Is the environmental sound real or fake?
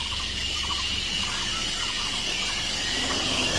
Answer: fake